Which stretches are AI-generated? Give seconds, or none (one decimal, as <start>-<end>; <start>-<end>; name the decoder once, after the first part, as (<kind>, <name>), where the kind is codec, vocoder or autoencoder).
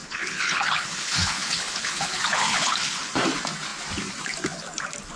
0.0-3.1 (codec, HILCodec)